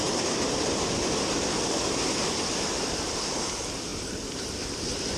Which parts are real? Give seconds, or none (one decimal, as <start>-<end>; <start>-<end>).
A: 0.0-5.2